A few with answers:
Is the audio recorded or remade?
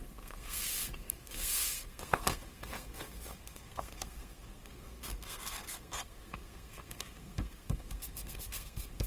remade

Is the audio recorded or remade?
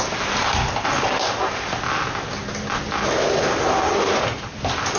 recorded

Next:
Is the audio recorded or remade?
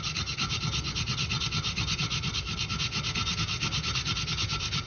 recorded